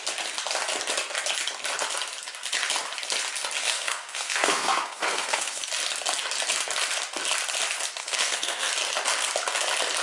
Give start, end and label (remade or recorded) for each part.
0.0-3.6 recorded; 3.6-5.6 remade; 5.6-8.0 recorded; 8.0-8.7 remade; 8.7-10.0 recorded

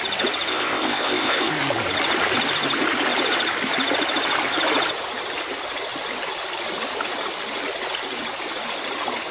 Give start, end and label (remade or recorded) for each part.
0.0-0.5 recorded; 0.5-1.5 remade; 1.5-9.3 recorded

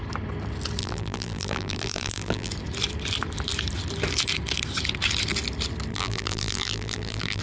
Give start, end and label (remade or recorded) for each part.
0.0-0.8 recorded; 0.8-2.5 remade; 2.5-5.9 recorded; 5.9-7.4 remade

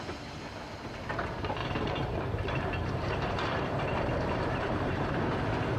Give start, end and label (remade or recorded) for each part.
0.0-1.6 recorded; 1.6-5.1 remade; 5.1-5.8 recorded

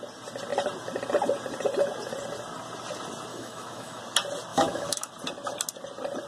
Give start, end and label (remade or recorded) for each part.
0.0-3.3 recorded; 3.3-4.0 remade; 4.0-4.5 recorded; 4.5-5.1 remade; 5.1-6.3 recorded